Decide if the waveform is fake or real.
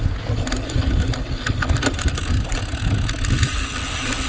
real